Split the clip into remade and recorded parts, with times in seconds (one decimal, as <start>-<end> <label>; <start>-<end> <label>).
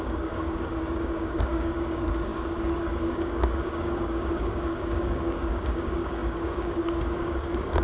0.0-7.8 remade